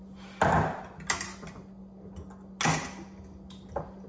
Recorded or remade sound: recorded